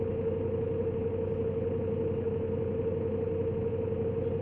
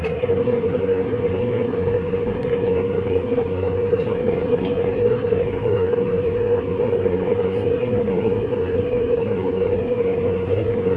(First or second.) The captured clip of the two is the first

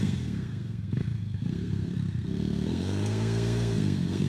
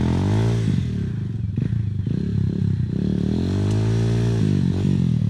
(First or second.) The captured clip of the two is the second